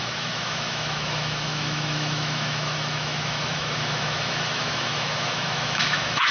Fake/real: fake